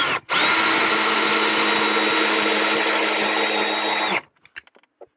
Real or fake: real